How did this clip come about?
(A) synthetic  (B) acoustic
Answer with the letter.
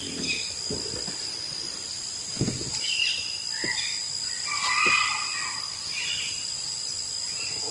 B